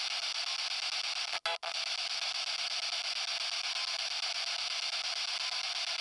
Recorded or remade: recorded